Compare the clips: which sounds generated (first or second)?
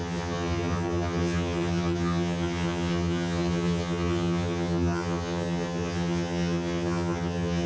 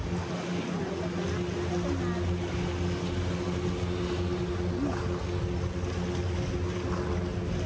first